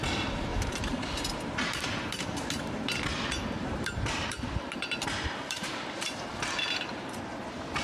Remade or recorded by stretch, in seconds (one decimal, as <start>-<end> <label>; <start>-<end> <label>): 0.0-0.5 recorded; 0.5-2.5 remade; 2.5-3.6 recorded; 3.6-7.1 remade; 7.1-7.8 recorded